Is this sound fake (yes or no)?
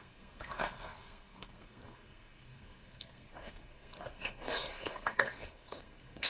yes